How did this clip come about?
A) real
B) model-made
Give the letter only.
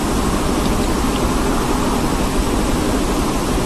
A